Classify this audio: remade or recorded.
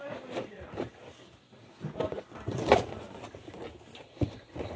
remade